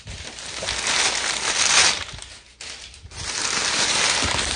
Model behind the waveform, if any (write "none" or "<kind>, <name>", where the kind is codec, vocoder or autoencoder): none